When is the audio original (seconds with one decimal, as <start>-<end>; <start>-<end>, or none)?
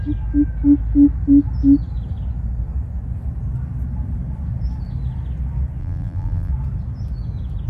0.0-5.8; 6.5-7.7